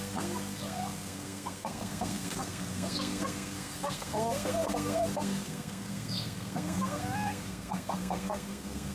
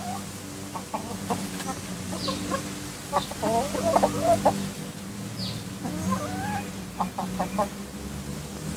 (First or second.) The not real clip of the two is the first